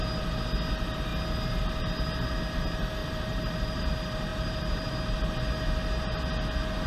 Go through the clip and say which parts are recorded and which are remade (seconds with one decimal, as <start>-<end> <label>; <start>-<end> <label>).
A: 0.0-3.0 recorded; 3.0-3.8 remade; 3.8-4.3 recorded; 4.3-4.9 remade; 4.9-6.9 recorded